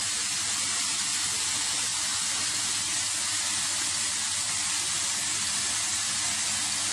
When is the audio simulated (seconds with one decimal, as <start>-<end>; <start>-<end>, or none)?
none